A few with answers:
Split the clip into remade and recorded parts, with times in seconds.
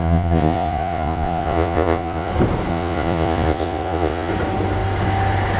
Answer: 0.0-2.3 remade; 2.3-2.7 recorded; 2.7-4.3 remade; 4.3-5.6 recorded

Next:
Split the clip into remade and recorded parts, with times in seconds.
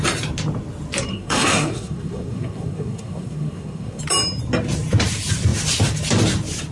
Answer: 0.0-1.1 recorded; 1.1-4.0 remade; 4.0-6.7 recorded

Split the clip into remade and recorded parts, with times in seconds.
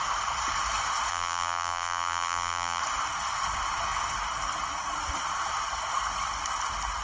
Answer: 0.0-1.1 recorded; 1.1-2.8 remade; 2.8-7.0 recorded